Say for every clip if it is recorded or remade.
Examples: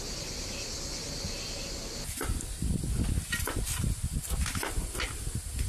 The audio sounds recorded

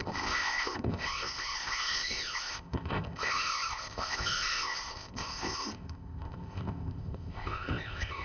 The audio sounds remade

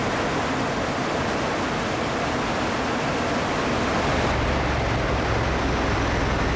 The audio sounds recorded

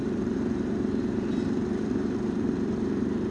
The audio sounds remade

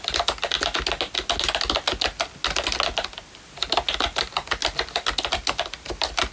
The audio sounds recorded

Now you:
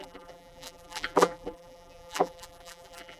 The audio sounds remade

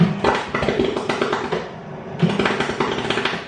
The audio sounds recorded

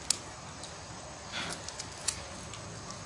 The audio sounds recorded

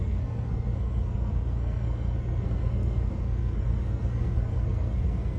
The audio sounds remade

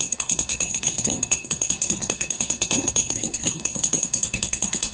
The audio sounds remade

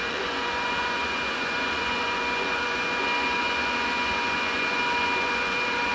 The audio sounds remade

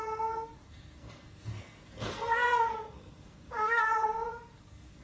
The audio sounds remade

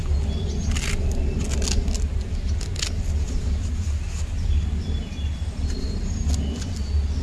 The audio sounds recorded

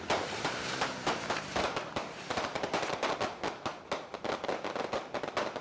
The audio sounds recorded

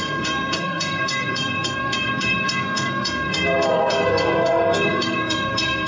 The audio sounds remade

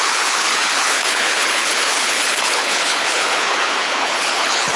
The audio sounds remade